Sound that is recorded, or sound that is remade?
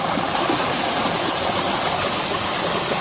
recorded